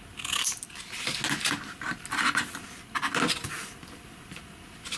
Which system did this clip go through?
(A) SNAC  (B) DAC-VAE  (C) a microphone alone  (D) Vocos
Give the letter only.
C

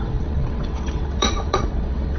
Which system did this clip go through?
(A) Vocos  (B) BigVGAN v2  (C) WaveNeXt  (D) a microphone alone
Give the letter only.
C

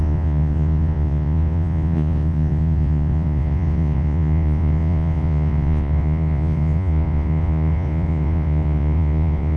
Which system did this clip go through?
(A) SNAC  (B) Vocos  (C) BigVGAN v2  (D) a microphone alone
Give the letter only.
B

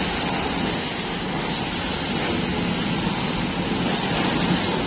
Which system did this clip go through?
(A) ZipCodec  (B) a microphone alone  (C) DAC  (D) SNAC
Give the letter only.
B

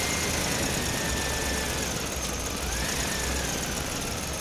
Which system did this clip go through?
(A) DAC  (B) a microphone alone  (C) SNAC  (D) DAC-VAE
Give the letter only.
B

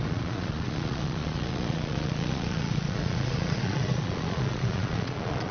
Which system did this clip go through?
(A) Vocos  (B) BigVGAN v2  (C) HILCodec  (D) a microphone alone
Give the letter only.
A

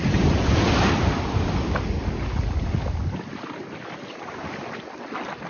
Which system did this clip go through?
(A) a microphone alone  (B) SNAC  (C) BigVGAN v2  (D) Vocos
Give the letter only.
A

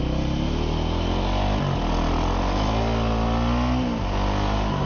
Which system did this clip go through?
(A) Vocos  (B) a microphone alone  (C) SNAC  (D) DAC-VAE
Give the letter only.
B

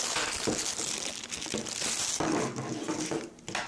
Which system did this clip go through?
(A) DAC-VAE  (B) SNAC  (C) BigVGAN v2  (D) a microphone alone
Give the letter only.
D